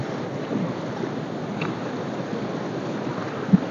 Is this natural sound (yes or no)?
yes